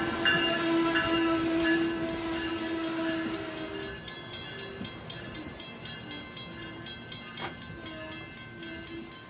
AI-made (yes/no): no